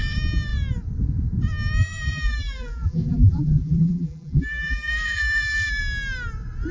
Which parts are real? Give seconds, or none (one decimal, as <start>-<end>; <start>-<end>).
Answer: 0.0-1.8; 5.8-6.7